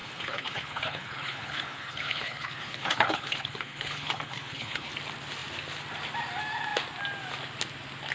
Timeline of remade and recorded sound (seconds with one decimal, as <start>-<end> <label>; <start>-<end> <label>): 0.0-4.9 remade; 4.9-8.1 recorded